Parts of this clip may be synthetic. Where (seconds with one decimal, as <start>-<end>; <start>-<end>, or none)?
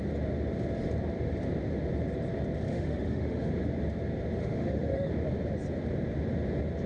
2.7-3.5; 4.4-5.1